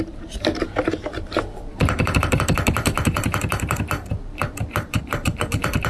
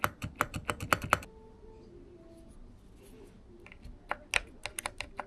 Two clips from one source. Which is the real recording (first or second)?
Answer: second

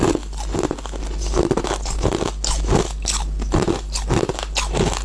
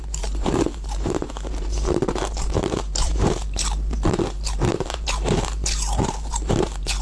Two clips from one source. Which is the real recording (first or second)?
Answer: first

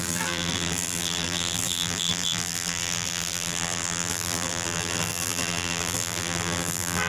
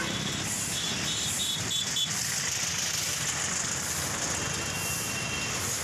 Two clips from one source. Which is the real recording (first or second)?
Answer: second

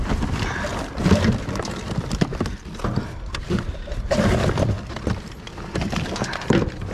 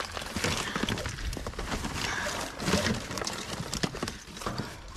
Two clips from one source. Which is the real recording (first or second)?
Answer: first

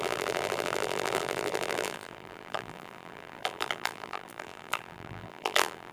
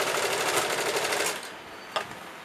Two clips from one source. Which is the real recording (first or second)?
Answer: second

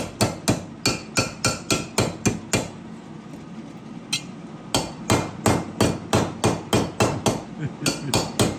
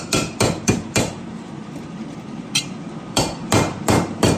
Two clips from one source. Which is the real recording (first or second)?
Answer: first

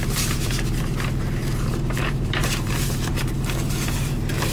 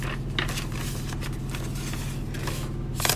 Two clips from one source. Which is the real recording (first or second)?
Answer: second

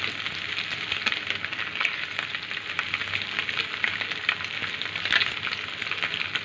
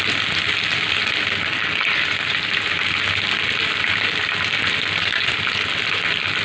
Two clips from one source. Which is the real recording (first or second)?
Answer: first